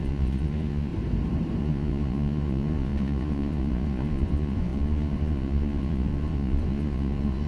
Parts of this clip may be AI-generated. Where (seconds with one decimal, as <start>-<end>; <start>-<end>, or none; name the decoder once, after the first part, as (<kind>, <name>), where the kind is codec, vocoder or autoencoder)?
0.0-0.9 (vocoder, Vocos); 1.6-7.5